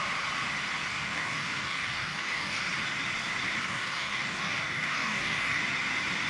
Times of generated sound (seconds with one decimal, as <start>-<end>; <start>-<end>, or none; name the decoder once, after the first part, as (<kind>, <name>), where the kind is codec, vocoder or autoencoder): 0.9-2.6 (codec, DAC); 3.6-5.6